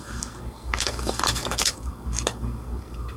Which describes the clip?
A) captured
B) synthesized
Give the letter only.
B